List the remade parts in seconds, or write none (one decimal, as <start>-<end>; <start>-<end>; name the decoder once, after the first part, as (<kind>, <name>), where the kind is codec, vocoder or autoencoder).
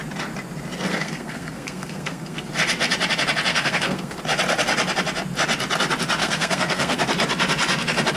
0.9-2.5 (codec, SNAC); 3.5-4.2; 6.2-7.0